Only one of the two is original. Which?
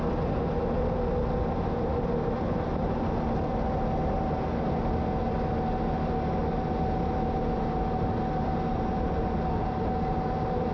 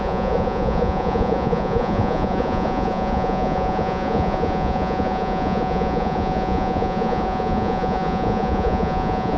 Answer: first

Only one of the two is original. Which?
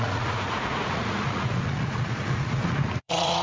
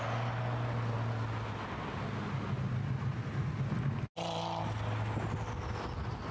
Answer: second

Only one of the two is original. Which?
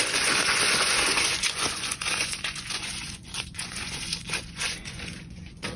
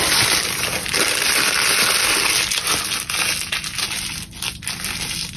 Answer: second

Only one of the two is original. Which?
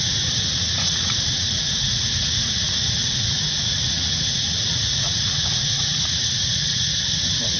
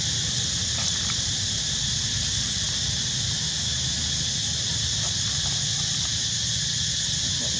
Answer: second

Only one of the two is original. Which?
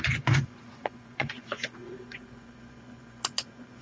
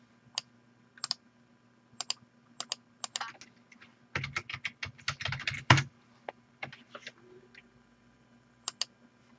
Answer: second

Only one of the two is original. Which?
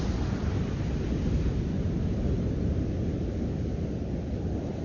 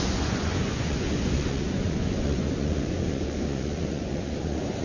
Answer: first